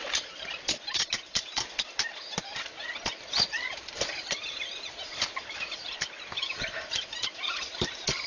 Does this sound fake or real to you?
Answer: real